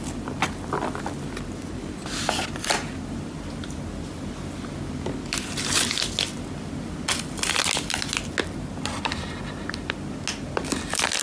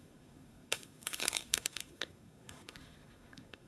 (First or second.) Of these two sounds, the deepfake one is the second